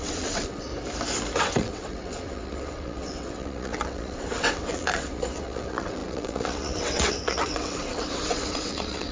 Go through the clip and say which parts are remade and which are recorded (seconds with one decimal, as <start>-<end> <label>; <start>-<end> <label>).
0.0-0.7 remade; 0.7-1.4 recorded; 1.4-9.1 remade